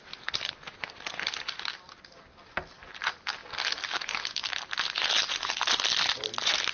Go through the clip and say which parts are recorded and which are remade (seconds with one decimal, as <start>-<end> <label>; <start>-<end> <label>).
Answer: 0.0-6.7 recorded